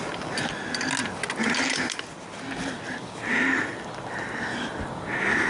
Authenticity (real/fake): real